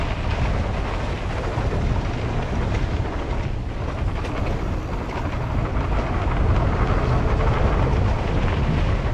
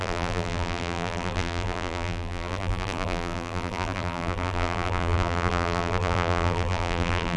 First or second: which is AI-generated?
second